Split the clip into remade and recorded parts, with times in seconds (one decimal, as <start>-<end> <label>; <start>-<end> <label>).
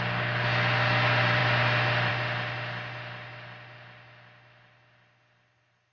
0.0-5.9 recorded